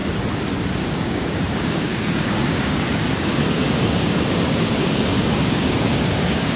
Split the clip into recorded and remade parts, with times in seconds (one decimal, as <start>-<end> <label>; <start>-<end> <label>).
0.0-0.9 recorded; 0.9-6.6 remade